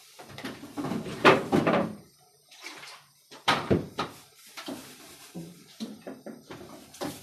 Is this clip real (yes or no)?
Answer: no